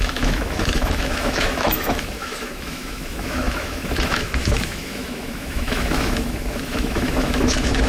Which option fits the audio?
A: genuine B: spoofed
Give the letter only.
B